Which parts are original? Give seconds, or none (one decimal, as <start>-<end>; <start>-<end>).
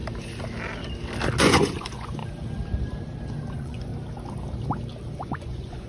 0.0-1.4; 2.2-3.5; 3.9-5.2